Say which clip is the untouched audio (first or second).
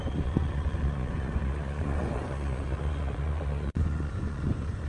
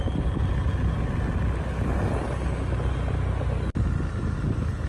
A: second